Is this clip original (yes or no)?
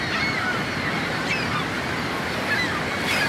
yes